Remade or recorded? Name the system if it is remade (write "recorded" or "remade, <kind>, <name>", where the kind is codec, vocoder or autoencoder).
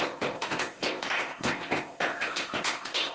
remade, codec, ZipCodec